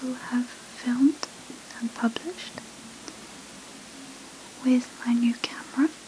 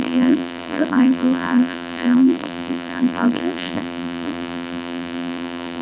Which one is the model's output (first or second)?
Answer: second